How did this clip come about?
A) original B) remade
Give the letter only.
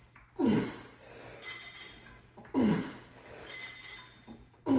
A